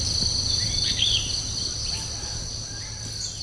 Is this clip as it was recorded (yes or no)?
yes